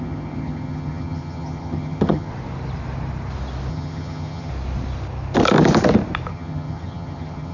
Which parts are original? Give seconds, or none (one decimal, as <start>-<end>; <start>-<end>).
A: 2.3-3.7; 4.5-6.3